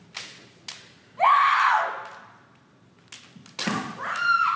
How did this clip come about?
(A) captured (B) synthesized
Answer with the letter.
A